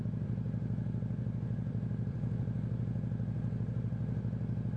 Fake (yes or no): yes